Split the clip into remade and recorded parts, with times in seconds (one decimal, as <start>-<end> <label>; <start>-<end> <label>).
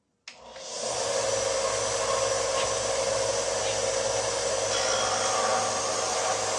0.0-6.6 recorded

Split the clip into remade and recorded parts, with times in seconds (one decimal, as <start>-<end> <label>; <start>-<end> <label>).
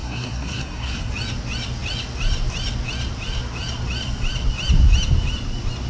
0.0-1.1 remade; 1.1-5.9 recorded